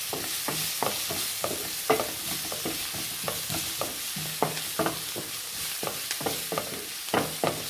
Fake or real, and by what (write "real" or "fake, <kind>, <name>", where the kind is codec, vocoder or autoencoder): real